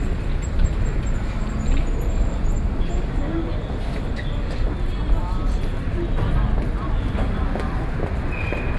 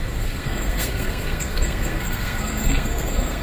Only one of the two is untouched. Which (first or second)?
first